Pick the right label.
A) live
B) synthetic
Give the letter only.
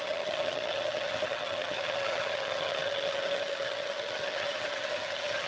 B